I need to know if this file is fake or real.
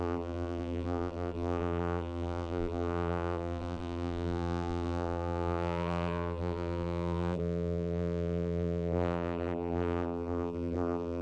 fake